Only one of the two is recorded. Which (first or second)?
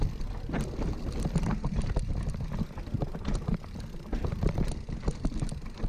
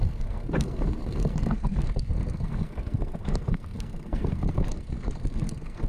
first